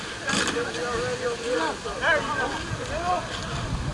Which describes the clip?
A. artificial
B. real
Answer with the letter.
B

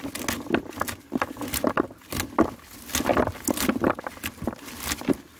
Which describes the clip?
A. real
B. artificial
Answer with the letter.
A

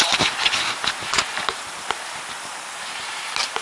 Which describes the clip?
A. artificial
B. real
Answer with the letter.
B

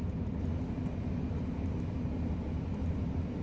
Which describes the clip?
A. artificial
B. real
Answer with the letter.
B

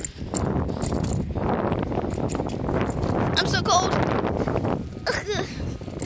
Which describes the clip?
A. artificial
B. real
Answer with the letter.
B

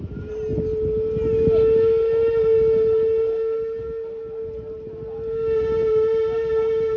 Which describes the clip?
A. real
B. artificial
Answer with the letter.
A